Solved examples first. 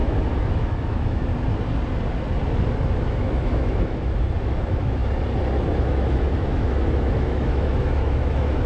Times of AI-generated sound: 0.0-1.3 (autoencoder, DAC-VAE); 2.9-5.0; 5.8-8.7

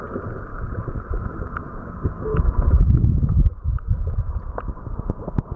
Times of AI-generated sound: 0.5-1.4 (autoencoder, DAC-VAE); 2.3-3.8

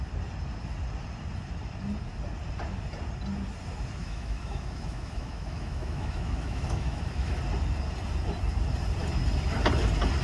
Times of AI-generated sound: 4.0-7.4 (autoencoder, DAC-VAE)

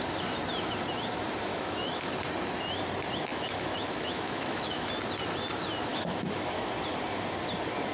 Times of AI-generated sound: 1.5-2.1 (autoencoder, DAC-VAE); 3.3-4.9; 5.9-6.7

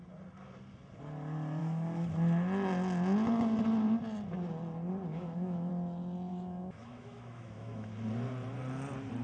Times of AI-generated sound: 1.6-2.1 (autoencoder, DAC-VAE); 5.1-5.7; 6.3-7.9

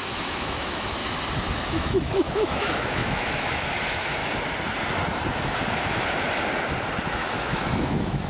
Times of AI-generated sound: 0.0-1.0 (autoencoder, DAC-VAE); 1.7-4.2; 7.1-8.3

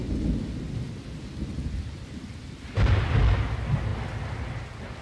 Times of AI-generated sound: none

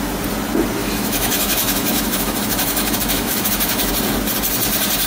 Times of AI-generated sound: 0.8-3.9 (autoencoder, DAC-VAE)